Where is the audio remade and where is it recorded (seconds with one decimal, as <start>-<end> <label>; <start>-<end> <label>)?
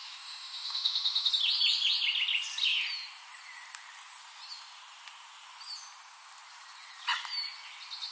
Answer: 0.0-1.3 remade; 1.3-8.1 recorded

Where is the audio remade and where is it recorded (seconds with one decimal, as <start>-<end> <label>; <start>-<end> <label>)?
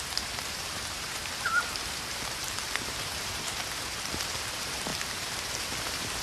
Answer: 0.0-6.2 remade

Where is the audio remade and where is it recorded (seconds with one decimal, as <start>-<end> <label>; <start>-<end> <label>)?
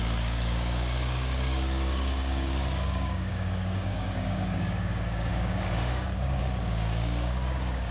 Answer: 0.0-7.9 remade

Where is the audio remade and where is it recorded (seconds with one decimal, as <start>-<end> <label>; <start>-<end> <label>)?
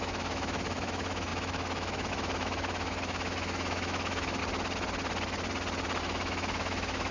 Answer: 0.0-4.4 remade; 4.4-6.0 recorded; 6.0-7.1 remade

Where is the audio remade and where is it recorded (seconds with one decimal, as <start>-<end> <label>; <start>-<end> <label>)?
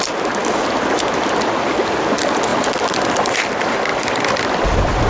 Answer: 0.0-5.1 recorded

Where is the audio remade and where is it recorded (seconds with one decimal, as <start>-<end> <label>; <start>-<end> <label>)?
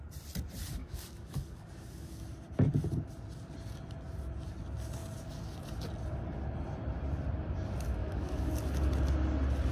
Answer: 0.0-0.8 recorded; 0.8-2.2 remade; 2.2-8.0 recorded; 8.0-8.5 remade; 8.5-9.7 recorded